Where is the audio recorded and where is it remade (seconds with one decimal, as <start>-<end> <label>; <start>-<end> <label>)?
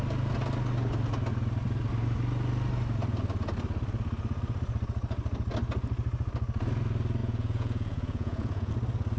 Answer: 0.0-7.2 recorded; 7.2-8.7 remade; 8.7-9.2 recorded